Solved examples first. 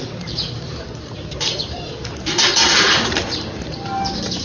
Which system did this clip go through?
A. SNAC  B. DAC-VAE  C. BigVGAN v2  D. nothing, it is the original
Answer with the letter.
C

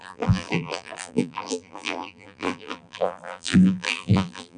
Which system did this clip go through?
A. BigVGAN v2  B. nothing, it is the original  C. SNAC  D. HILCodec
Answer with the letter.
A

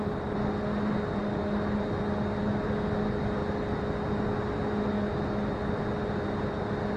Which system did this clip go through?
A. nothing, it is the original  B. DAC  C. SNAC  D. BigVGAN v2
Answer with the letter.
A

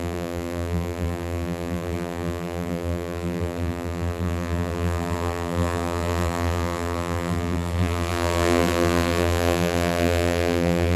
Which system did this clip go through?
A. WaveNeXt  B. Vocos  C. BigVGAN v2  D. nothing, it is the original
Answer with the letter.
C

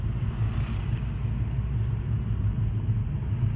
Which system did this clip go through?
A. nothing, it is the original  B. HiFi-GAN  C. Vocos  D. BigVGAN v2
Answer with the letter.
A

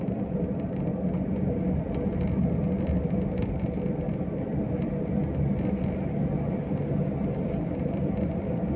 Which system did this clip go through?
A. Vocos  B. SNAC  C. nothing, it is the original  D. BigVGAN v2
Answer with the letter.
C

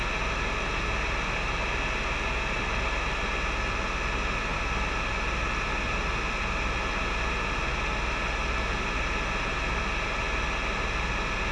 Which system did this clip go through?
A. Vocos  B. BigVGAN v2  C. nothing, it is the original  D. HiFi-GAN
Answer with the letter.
C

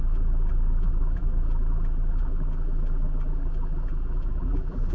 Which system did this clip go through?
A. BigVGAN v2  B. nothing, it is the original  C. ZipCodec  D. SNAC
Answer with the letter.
A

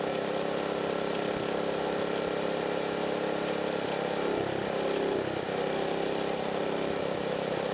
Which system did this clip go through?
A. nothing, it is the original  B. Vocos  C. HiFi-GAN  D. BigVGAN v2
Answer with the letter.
A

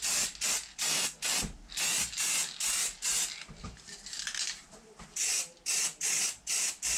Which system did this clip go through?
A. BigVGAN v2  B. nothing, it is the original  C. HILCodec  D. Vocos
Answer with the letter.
B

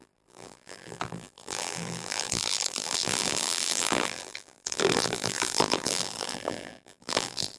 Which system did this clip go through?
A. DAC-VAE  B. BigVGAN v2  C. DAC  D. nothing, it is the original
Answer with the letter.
B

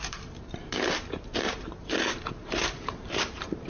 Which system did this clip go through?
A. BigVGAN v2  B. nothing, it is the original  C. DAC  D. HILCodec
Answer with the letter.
A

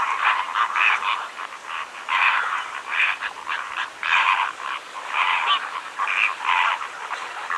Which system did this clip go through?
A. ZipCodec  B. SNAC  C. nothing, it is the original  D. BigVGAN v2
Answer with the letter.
D